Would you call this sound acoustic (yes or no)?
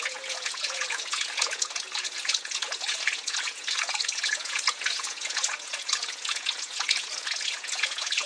no